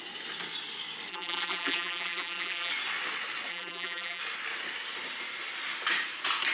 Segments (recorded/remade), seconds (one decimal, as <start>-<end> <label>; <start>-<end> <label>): 0.0-1.1 recorded; 1.1-2.7 remade; 2.7-3.5 recorded; 3.5-4.2 remade; 4.2-6.5 recorded